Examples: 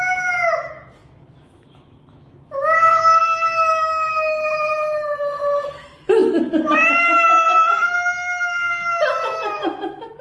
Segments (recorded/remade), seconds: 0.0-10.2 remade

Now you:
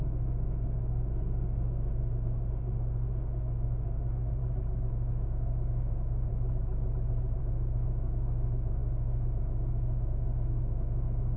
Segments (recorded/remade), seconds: 0.0-4.4 remade; 4.4-4.9 recorded; 4.9-6.3 remade; 6.3-7.4 recorded; 7.4-11.4 remade

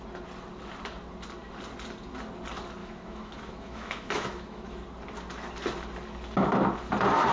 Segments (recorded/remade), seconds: 0.0-2.8 recorded; 2.8-4.8 remade; 4.8-7.3 recorded

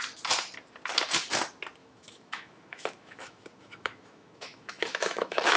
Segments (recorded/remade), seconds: 0.0-1.8 recorded; 1.8-5.6 remade

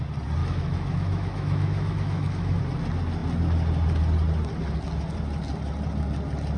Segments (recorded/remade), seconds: 0.0-0.4 recorded; 0.4-2.6 remade; 2.6-6.6 recorded

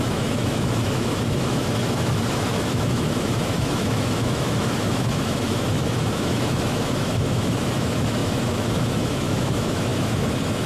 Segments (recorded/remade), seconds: 0.0-10.7 remade

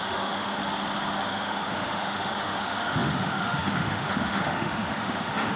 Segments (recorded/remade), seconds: 0.0-0.6 remade; 0.6-1.2 recorded; 1.2-5.6 remade